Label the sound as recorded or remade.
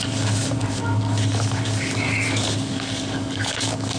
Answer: remade